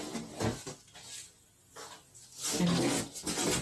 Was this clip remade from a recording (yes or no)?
no